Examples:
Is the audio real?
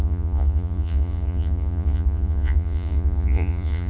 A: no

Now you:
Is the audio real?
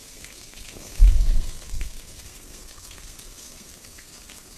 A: no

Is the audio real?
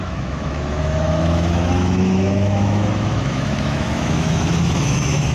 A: no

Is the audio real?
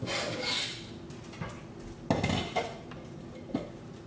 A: yes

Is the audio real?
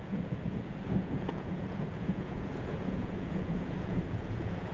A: no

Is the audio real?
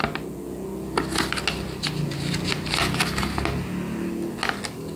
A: yes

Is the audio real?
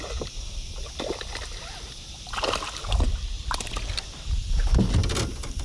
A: yes